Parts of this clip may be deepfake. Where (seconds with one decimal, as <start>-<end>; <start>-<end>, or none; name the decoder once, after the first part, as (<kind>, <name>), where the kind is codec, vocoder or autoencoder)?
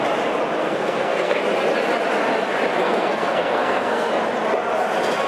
0.6-1.4 (codec, SNAC); 2.8-4.1